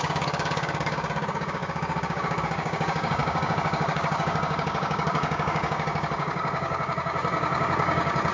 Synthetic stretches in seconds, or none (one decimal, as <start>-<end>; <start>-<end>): 0.0-8.3